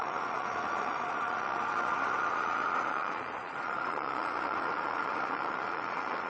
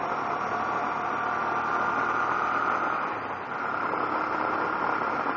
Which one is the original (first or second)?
second